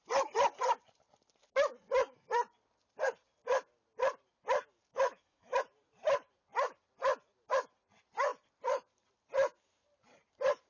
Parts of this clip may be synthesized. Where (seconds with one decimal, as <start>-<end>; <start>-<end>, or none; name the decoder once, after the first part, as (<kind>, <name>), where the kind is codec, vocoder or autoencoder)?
4.9-5.6 (autoencoder, DAC-VAE)

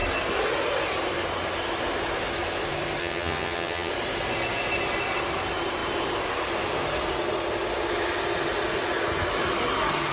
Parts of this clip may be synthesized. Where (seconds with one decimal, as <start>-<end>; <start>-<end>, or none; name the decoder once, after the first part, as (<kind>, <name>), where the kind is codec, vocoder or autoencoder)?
3.0-3.9 (vocoder, HiFi-GAN)

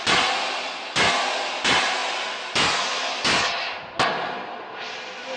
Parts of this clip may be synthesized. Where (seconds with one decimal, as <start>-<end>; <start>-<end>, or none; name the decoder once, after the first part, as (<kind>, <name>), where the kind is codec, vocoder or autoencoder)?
none